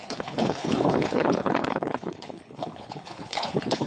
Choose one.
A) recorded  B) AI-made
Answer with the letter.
B